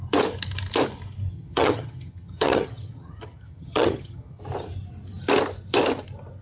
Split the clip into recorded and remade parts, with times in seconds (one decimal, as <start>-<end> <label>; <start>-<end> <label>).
0.0-1.3 recorded; 1.3-4.4 remade; 4.4-6.4 recorded